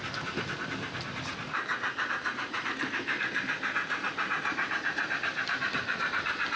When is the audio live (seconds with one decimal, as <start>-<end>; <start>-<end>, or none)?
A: none